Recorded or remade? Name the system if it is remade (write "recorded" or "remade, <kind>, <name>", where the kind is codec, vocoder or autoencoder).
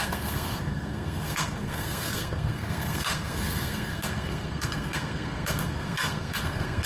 remade, codec, SNAC